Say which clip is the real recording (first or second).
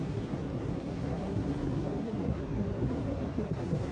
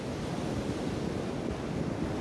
second